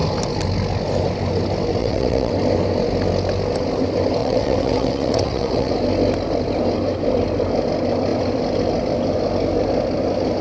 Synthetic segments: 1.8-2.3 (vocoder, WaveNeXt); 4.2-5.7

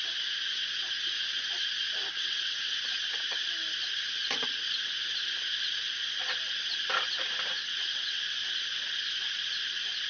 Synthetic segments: 2.1-2.8 (vocoder, WaveNeXt); 7.6-8.2